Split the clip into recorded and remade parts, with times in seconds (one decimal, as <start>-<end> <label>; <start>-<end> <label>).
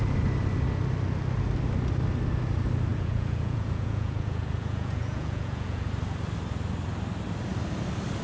0.0-2.9 recorded; 2.9-5.9 remade; 5.9-8.2 recorded